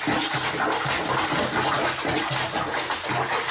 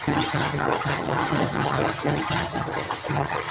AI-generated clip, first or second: second